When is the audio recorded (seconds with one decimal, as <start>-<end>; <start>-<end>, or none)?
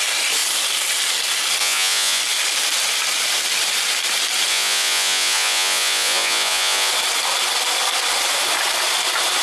0.0-1.6; 2.2-4.5; 6.9-9.4